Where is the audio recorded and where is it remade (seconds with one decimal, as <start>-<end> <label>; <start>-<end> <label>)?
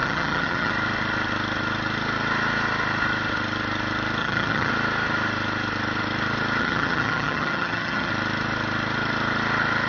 0.0-0.7 remade; 0.7-4.2 recorded; 4.2-4.7 remade; 4.7-6.6 recorded; 6.6-8.1 remade; 8.1-9.9 recorded